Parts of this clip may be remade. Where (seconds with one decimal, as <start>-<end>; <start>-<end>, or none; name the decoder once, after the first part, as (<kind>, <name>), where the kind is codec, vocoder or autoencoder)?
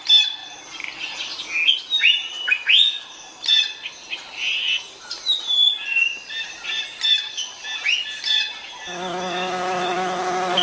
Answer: none